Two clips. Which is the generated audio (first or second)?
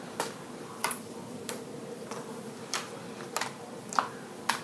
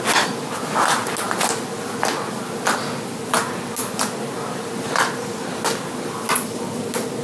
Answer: first